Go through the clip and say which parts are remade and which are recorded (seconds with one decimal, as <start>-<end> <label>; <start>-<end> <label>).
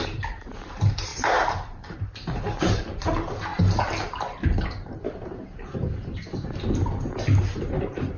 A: 0.0-3.5 remade; 3.5-4.6 recorded; 4.6-6.0 remade; 6.0-7.4 recorded; 7.4-8.2 remade